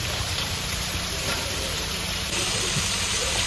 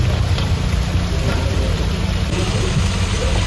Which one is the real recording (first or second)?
second